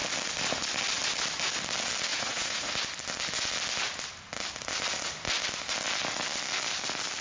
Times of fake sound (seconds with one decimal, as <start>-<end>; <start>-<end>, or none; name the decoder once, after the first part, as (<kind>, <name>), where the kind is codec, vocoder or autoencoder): 2.1-2.7 (vocoder, Vocos)